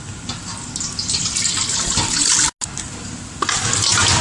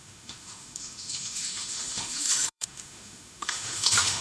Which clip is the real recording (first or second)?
first